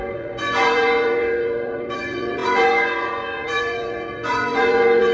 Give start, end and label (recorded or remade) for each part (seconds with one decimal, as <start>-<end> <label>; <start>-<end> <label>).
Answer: 0.0-5.1 remade